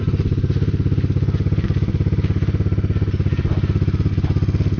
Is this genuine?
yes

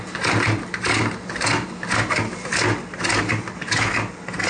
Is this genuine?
yes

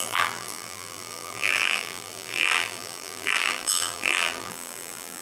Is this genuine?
no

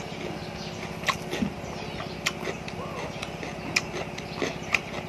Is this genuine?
yes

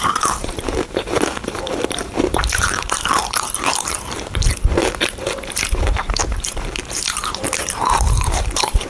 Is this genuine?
no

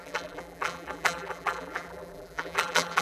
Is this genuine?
no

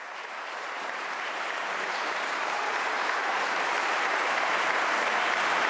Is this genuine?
no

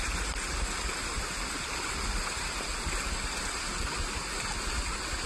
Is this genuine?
yes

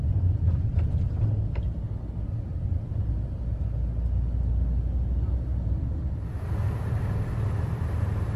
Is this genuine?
yes